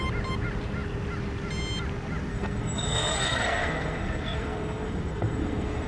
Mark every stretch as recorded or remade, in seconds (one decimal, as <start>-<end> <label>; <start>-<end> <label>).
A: 0.0-2.3 recorded; 2.3-5.9 remade